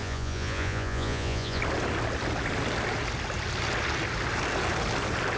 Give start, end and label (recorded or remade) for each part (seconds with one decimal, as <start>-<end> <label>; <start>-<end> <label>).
0.0-1.6 remade; 1.6-5.4 recorded

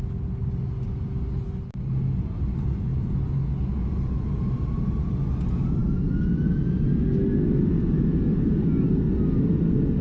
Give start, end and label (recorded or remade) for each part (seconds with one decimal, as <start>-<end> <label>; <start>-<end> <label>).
0.0-10.0 recorded

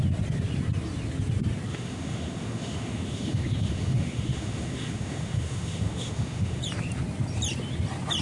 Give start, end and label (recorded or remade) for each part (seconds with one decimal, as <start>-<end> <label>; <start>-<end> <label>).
0.0-1.7 recorded; 1.7-6.6 remade; 6.6-8.2 recorded

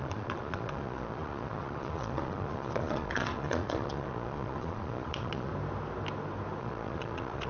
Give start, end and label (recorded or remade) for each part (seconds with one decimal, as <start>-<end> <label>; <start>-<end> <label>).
0.0-5.5 remade; 5.5-6.6 recorded; 6.6-7.5 remade